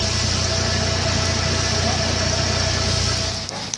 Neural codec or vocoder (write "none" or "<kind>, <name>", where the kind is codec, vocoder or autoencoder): none